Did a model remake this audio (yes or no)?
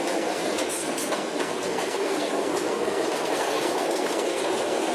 yes